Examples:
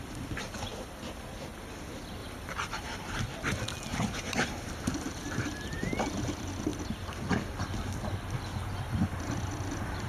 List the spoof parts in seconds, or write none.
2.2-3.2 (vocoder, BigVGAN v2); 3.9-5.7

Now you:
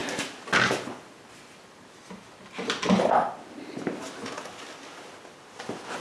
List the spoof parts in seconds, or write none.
none

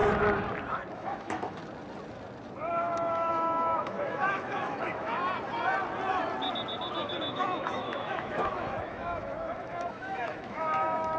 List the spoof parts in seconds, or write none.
0.9-1.6 (autoencoder, DAC-VAE); 2.7-5.2; 7.2-11.2

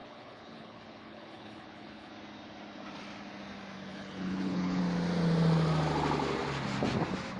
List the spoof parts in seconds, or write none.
0.0-2.1 (codec, HILCodec); 3.9-4.8

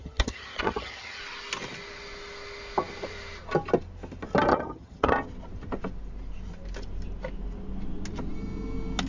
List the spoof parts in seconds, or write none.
0.0-1.2 (vocoder, HiFi-GAN); 4.5-5.1

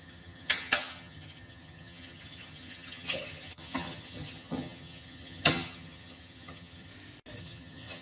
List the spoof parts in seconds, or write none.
0.0-6.9 (vocoder, HiFi-GAN); 7.4-8.0

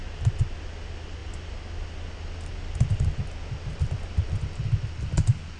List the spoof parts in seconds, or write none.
none